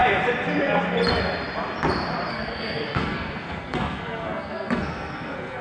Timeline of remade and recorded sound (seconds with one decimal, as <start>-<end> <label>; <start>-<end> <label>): 0.0-2.3 recorded; 2.3-5.6 remade